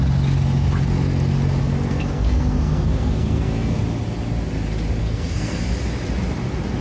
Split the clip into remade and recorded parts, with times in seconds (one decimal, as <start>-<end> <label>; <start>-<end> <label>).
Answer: 0.0-1.6 recorded; 1.6-3.8 remade; 3.8-5.0 recorded; 5.0-5.6 remade; 5.6-6.8 recorded